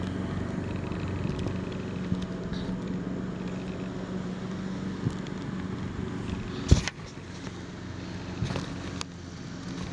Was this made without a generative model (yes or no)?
yes